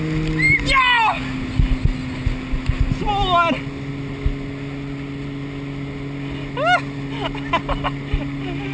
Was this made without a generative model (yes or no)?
yes